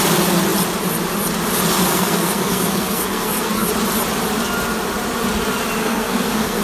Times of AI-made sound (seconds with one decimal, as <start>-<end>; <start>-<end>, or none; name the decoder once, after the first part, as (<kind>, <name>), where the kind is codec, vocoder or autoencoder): 1.9-3.7 (codec, SNAC); 5.8-6.6